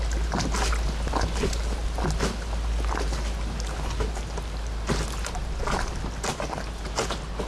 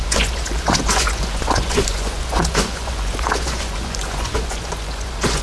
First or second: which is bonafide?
first